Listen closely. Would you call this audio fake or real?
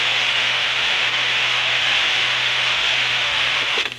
fake